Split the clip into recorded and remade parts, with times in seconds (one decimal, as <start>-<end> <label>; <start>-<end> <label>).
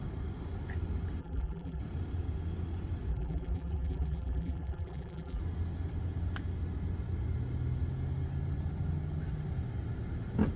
0.0-1.2 recorded; 1.2-1.8 remade; 1.8-3.1 recorded; 3.1-5.4 remade; 5.4-10.6 recorded